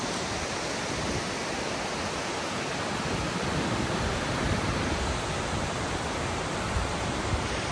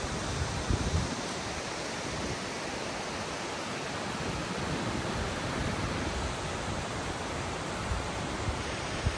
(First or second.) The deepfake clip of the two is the second